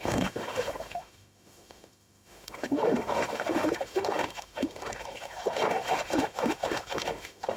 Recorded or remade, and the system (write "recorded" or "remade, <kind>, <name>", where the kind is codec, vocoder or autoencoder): remade, autoencoder, DAC-VAE